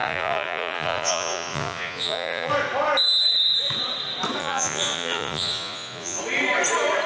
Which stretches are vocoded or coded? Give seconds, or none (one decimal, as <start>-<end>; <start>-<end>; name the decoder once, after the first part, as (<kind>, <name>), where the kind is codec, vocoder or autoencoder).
0.0-2.5 (vocoder, Vocos); 4.4-6.2